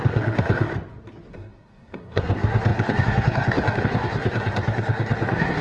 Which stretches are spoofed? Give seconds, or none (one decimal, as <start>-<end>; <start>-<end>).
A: 0.0-0.7; 1.3-5.6